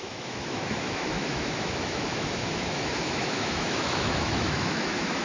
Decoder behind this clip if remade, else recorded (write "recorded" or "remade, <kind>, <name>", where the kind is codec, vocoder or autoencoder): remade, autoencoder, DAC-VAE